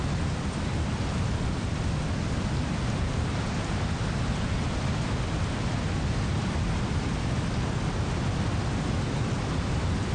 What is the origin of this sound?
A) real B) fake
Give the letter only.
A